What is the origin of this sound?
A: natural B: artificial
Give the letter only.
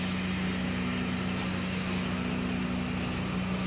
A